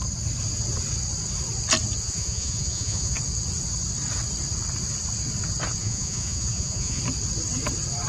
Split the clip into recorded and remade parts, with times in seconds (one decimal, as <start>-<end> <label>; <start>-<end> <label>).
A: 0.0-2.0 recorded; 2.0-3.2 remade; 3.2-5.8 recorded; 5.8-7.0 remade; 7.0-8.1 recorded